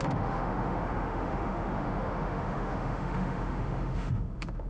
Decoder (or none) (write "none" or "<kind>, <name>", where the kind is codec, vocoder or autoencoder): autoencoder, DAC-VAE